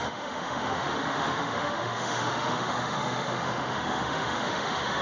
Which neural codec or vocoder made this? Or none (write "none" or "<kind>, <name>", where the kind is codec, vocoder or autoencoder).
autoencoder, DAC-VAE